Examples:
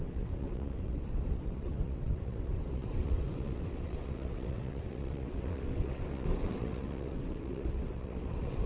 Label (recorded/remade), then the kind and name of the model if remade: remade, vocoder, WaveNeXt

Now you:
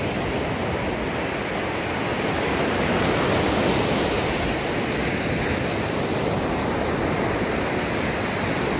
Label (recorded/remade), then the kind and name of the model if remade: recorded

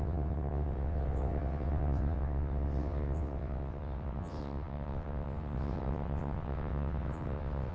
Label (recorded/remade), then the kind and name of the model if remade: remade, vocoder, WaveNeXt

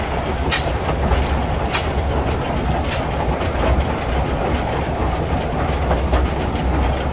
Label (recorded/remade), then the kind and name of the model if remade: recorded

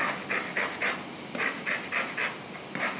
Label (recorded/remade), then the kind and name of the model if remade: recorded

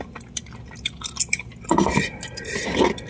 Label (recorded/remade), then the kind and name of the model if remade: recorded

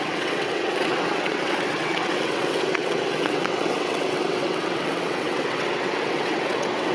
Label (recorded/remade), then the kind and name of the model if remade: remade, vocoder, WaveNeXt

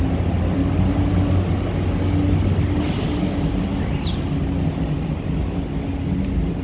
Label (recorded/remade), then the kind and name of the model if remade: recorded